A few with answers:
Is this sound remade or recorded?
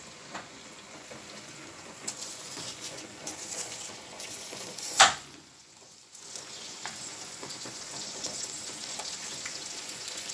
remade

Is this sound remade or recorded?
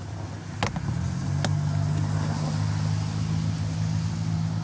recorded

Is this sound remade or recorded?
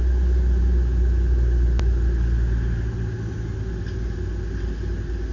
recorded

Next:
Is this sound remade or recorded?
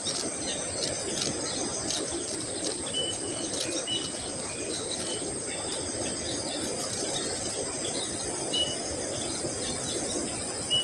recorded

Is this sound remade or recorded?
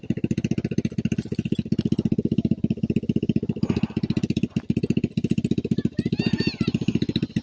recorded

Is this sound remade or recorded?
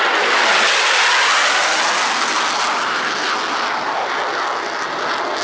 recorded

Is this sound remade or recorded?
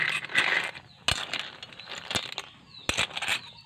recorded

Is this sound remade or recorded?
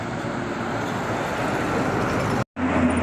recorded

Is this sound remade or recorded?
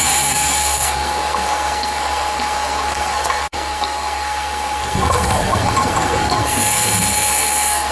remade